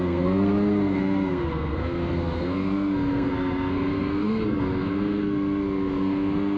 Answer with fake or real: fake